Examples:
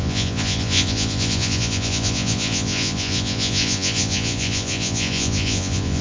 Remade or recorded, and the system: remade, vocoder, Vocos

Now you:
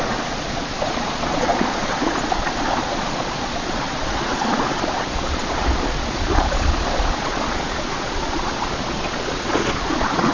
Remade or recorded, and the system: remade, vocoder, Vocos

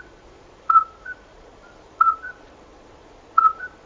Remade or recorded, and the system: remade, vocoder, Vocos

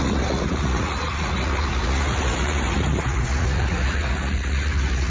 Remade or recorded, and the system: remade, vocoder, Vocos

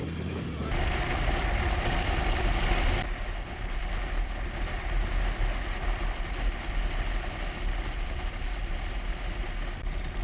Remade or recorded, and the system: recorded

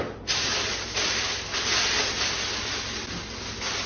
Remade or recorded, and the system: recorded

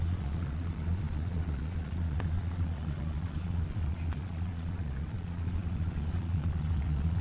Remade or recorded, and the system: remade, vocoder, Vocos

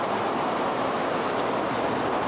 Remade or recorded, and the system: recorded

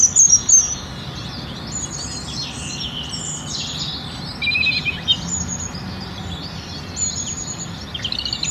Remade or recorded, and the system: recorded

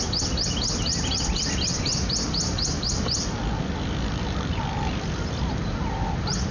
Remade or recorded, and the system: recorded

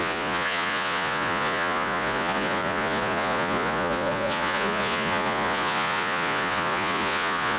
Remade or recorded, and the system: remade, vocoder, Vocos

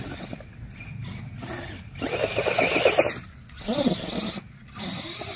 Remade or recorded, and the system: recorded